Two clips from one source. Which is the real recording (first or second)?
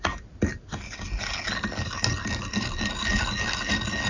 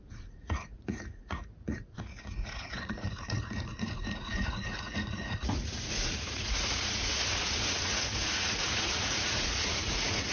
first